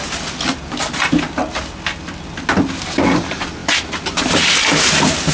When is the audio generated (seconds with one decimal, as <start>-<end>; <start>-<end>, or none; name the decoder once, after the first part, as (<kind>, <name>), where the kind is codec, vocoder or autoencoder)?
none